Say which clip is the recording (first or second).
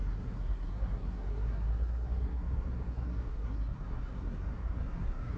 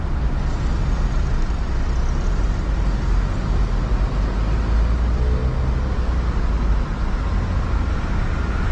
second